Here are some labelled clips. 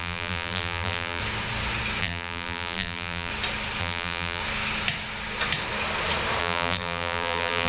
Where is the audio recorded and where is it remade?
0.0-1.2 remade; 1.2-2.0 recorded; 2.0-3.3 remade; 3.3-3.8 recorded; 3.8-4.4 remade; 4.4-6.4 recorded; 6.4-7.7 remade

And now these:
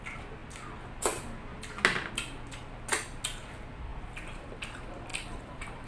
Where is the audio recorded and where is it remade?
0.0-5.1 recorded; 5.1-5.9 remade